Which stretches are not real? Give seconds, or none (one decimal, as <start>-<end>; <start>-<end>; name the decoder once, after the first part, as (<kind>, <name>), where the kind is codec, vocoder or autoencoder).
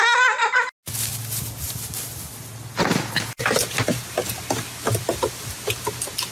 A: none